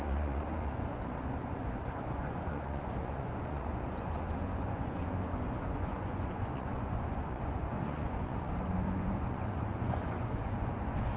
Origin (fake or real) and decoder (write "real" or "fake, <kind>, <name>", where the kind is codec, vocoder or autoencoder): fake, vocoder, Vocos